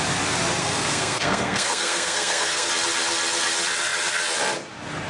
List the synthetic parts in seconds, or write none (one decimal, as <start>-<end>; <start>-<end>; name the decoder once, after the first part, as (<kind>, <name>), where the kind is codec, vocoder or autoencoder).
0.6-2.7 (codec, SNAC)